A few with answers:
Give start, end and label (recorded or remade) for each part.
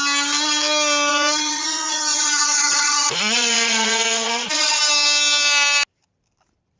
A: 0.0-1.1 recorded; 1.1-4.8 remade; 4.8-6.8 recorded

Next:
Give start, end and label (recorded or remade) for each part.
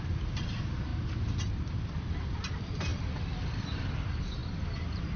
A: 0.0-0.9 remade; 0.9-1.7 recorded; 1.7-4.4 remade; 4.4-5.2 recorded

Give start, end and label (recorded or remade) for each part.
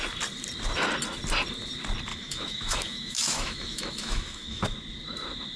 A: 0.0-2.1 recorded; 2.1-4.6 remade; 4.6-5.6 recorded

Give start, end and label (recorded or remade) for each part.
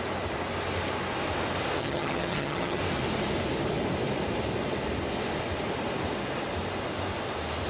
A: 0.0-1.8 recorded; 1.8-2.8 remade; 2.8-7.7 recorded